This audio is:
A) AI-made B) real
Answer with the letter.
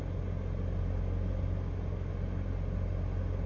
B